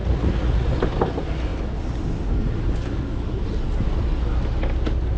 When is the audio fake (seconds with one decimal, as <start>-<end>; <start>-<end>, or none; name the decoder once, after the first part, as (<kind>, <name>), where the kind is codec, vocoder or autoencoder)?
0.0-0.7 (vocoder, Vocos)